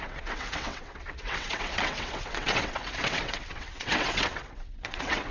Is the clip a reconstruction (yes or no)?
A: yes